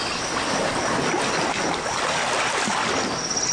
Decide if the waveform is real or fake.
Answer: real